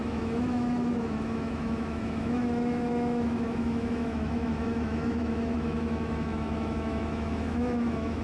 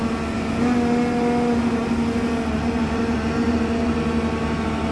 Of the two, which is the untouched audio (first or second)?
second